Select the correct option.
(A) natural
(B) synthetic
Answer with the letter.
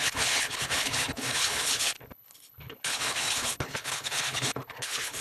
B